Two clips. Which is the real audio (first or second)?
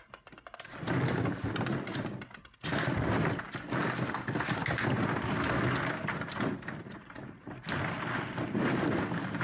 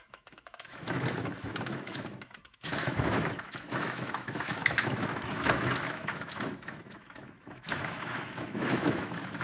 first